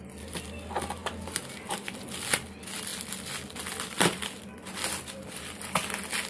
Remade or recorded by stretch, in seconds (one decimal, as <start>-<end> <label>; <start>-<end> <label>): 0.0-6.3 recorded